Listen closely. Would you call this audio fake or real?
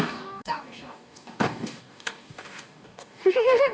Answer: fake